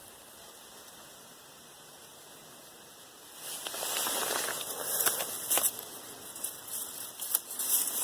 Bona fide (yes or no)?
yes